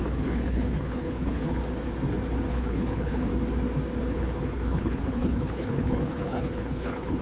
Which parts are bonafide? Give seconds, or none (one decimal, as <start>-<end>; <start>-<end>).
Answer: 1.6-2.5; 3.3-4.0